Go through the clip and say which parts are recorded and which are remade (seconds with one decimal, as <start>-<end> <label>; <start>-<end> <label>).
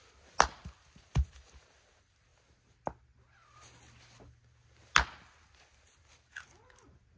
0.0-7.2 recorded